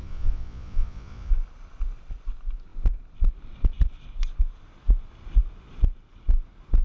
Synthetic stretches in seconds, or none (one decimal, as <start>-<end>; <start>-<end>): 0.0-1.3